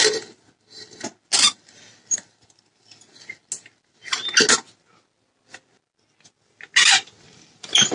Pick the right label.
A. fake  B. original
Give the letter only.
B